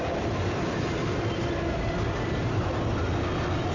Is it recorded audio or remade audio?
recorded